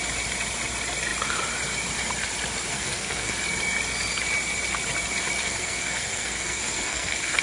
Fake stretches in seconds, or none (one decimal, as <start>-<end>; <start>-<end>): 2.7-3.3; 5.4-7.4